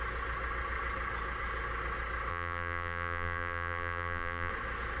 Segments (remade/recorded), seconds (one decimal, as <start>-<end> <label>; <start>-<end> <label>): 0.0-2.3 recorded; 2.3-4.5 remade; 4.5-5.0 recorded